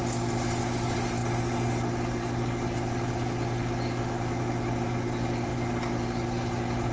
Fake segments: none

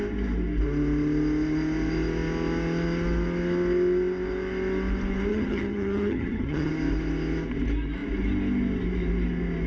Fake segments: 5.3-6.7 (vocoder, HiFi-GAN)